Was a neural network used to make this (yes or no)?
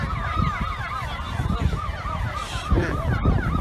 no